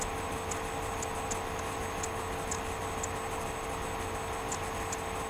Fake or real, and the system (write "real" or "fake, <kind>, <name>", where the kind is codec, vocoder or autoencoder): real